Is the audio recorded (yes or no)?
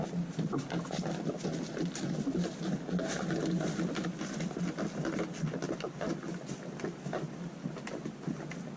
yes